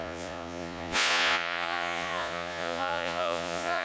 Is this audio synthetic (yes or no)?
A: yes